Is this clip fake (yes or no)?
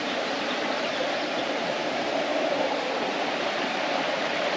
yes